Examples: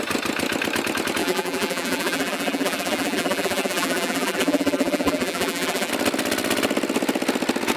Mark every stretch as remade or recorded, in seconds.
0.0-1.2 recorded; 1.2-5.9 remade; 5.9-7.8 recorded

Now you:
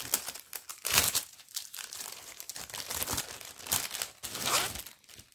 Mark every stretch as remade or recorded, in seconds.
0.0-0.7 recorded; 0.7-2.6 remade; 2.6-5.3 recorded

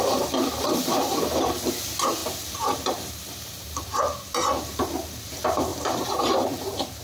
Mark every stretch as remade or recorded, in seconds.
0.0-7.0 remade

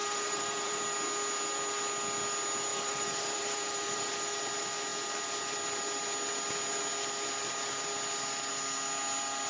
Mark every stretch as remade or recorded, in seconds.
0.0-0.8 remade; 0.8-2.7 recorded; 2.7-4.4 remade; 4.4-9.5 recorded

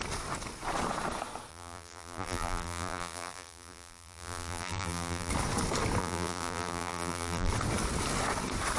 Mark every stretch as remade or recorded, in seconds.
0.0-1.5 recorded; 1.5-5.3 remade; 5.3-6.0 recorded; 6.0-7.5 remade; 7.5-8.8 recorded

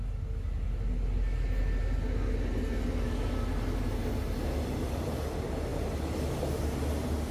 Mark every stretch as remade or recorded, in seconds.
0.0-7.3 recorded